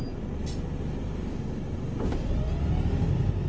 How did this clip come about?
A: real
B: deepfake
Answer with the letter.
A